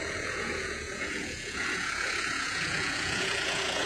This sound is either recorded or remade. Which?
remade